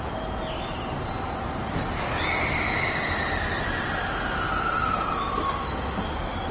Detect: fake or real real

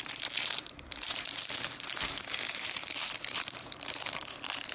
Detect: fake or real fake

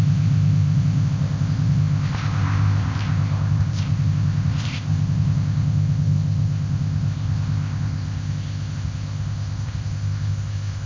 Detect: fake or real fake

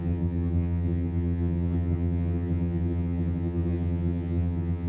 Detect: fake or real fake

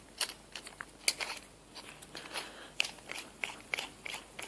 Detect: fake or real real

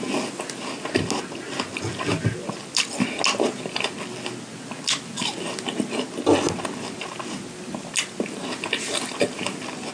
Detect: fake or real real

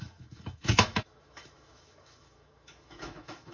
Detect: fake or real fake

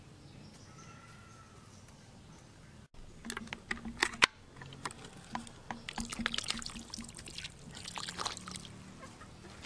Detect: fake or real real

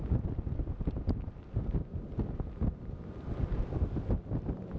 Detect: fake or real real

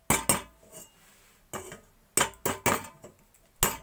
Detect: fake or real real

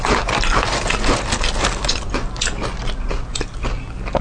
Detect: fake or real real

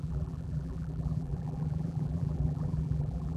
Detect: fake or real fake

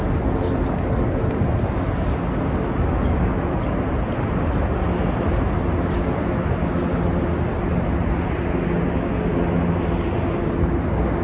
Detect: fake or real real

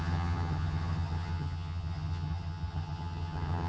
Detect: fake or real fake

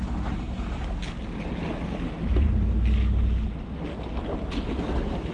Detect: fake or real real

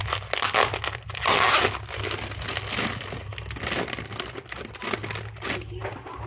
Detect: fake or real real